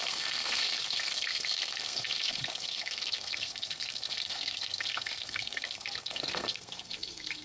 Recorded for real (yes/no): no